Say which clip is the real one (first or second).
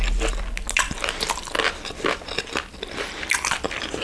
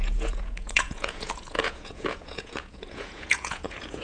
first